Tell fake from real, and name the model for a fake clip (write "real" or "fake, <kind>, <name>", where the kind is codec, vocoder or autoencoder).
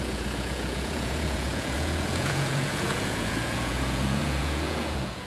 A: fake, vocoder, Vocos